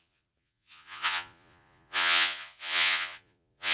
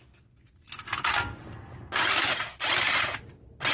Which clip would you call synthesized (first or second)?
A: first